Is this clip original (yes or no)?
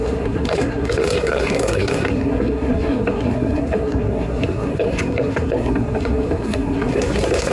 no